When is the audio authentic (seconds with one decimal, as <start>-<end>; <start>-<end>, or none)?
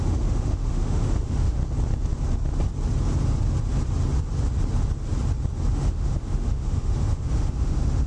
1.6-5.7